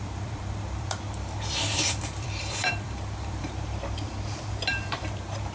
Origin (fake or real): fake